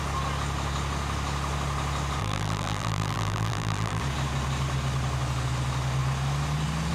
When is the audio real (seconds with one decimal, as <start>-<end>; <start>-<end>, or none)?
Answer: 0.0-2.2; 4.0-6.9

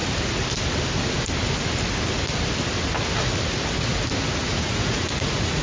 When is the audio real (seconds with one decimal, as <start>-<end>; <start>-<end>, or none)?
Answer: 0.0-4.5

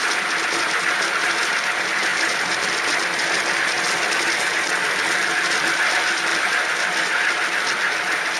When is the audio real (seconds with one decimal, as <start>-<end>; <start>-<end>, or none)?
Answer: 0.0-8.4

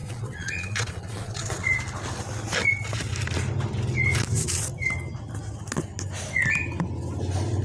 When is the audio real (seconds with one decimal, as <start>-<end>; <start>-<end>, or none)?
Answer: 1.7-7.6